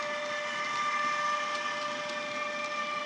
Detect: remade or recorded recorded